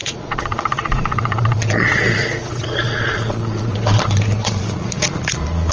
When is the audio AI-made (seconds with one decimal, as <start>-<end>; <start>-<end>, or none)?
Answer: 0.0-5.7